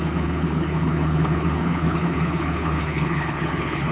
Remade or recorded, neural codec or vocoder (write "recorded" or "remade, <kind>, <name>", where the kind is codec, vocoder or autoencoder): remade, codec, HILCodec